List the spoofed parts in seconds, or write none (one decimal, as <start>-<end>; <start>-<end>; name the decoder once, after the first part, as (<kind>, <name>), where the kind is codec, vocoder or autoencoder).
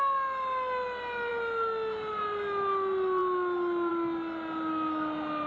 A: none